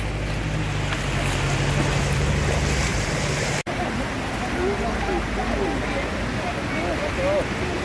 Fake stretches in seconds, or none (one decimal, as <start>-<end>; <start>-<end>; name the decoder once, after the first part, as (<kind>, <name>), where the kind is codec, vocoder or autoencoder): 2.9-4.3 (vocoder, BigVGAN v2)